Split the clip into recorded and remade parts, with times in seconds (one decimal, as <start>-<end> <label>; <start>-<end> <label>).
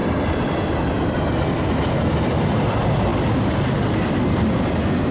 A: 0.0-5.1 recorded